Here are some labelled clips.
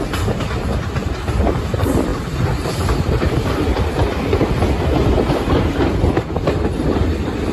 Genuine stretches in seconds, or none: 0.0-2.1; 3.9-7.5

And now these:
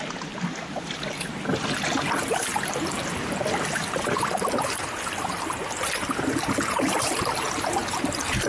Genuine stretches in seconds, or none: 0.0-7.8